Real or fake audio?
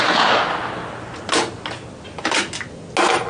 real